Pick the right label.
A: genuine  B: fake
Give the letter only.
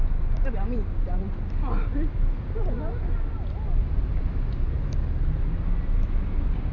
A